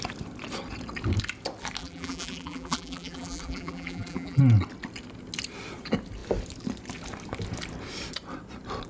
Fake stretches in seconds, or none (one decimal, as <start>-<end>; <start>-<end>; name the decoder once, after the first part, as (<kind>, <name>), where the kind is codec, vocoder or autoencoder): 1.8-4.4 (vocoder, BigVGAN v2)